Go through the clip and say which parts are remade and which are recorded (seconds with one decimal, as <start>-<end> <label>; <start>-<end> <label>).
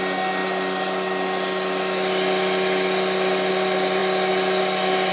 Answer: 0.0-5.1 recorded